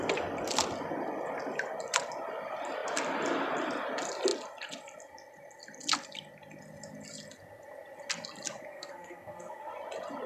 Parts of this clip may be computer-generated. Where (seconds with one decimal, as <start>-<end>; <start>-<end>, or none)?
8.7-9.7